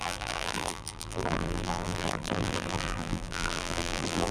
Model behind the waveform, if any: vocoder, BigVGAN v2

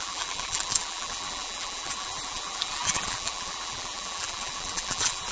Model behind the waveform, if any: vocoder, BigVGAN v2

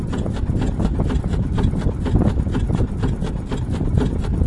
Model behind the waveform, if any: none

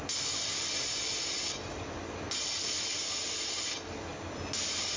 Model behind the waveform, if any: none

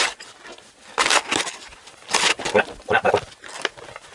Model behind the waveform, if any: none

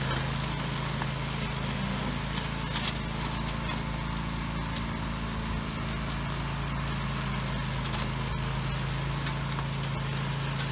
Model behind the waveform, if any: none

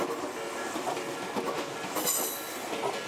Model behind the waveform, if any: none